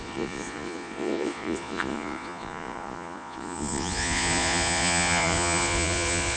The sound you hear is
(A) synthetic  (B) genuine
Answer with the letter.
A